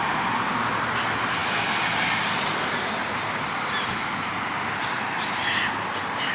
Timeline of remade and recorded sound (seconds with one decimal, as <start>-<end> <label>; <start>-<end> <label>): 0.0-6.3 recorded